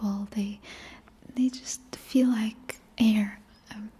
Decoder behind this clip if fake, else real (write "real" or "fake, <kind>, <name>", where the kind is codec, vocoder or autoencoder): real